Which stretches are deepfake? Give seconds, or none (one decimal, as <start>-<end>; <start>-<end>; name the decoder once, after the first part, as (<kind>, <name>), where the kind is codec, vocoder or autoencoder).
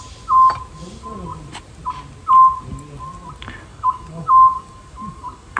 3.7-5.6 (codec, DAC)